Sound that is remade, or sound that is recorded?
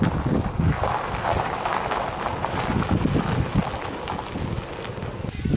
recorded